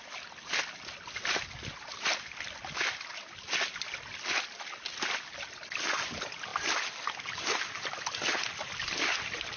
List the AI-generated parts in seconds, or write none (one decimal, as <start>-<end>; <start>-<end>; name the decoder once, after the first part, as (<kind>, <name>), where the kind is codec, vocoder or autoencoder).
none